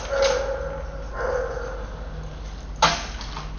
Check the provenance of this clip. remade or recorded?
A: recorded